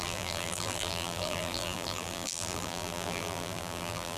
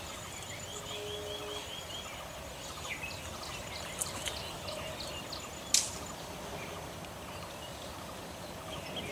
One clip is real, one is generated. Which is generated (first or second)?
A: first